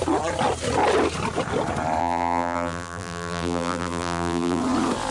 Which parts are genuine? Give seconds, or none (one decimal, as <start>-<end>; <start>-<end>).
0.0-2.0; 4.6-5.1